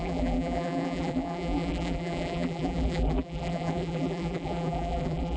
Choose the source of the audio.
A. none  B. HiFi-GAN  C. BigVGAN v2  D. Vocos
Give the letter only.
C